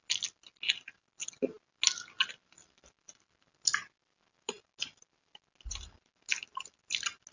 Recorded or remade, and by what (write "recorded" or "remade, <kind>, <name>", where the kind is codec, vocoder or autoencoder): recorded